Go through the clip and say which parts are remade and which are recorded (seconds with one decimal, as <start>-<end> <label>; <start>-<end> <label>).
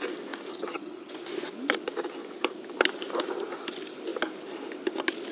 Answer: 0.0-0.5 recorded; 0.5-1.1 remade; 1.1-5.3 recorded